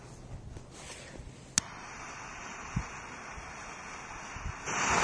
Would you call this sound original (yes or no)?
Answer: yes